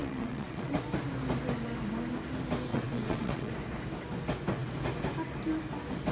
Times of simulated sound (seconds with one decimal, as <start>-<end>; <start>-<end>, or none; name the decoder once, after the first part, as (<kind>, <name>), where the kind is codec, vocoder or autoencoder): 0.0-0.7 (vocoder, WaveNeXt); 2.7-3.5

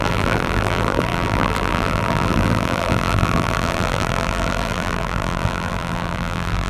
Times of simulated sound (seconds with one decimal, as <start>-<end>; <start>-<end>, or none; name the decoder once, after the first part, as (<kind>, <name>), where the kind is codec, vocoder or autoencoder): 0.0-6.7 (vocoder, BigVGAN v2)